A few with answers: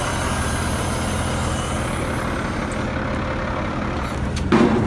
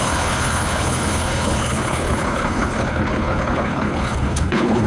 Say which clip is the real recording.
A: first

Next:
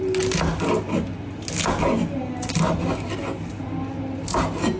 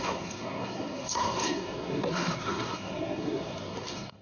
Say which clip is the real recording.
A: first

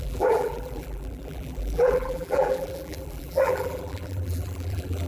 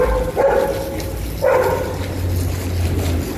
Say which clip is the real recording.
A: second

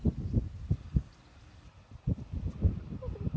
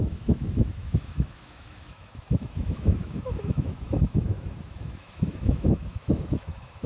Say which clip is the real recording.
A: first